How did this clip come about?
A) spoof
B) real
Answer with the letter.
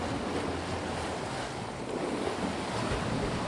B